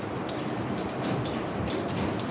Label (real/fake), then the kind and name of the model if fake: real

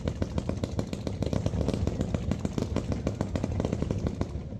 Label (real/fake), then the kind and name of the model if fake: real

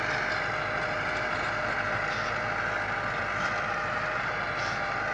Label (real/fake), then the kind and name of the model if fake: real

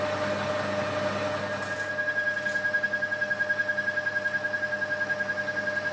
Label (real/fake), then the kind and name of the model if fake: real